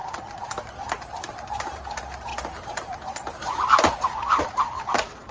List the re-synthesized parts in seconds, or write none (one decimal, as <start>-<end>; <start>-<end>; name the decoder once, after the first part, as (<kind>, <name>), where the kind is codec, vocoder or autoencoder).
0.9-2.3 (vocoder, BigVGAN v2); 4.4-5.3